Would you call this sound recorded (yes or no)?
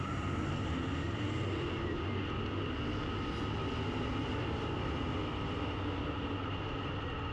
yes